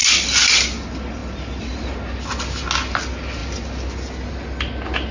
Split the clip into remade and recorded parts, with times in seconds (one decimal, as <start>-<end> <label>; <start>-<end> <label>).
0.0-5.1 recorded